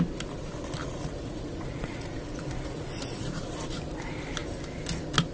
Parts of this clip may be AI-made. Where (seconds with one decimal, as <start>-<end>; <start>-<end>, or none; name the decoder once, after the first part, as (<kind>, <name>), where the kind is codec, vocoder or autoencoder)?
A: 0.8-3.5 (vocoder, Vocos)